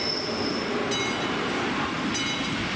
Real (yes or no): yes